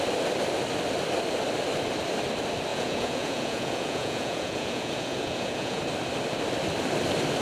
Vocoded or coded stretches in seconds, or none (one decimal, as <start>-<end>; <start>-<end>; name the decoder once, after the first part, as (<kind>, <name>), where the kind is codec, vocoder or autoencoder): 2.7-5.8 (vocoder, Vocos)